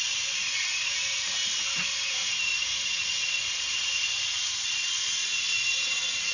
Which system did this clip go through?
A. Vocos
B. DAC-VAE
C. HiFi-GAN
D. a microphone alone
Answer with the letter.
A